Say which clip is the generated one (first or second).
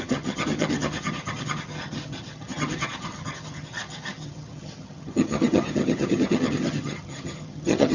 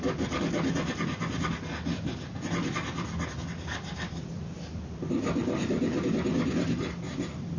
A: first